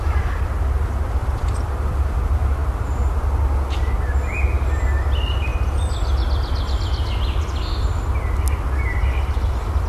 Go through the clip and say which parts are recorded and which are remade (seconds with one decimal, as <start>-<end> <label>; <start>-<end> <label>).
0.0-1.2 recorded; 1.2-2.2 remade; 2.2-9.9 recorded